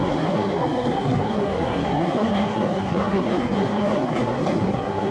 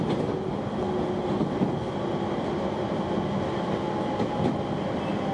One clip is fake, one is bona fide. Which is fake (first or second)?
first